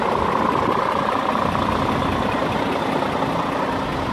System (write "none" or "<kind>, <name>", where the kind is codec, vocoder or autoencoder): none